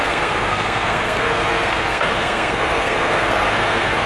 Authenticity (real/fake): fake